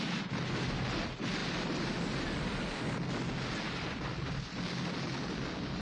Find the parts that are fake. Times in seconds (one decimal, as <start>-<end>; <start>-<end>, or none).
none